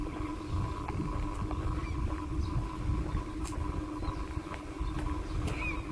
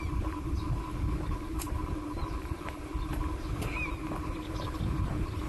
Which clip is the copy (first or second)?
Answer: second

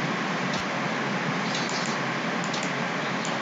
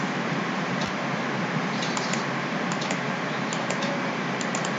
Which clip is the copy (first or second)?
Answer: second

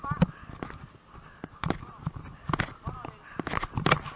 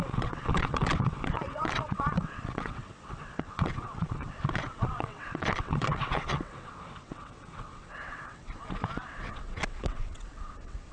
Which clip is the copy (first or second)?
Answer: second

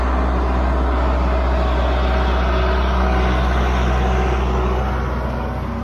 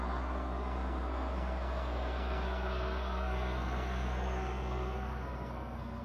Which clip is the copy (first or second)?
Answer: second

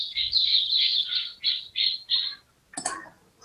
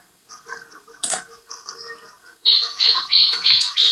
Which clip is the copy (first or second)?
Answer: second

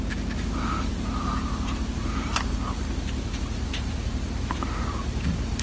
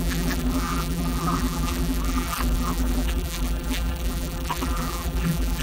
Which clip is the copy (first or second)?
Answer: second